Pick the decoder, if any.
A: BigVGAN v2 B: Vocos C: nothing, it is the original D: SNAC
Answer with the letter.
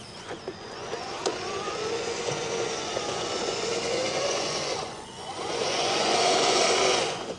B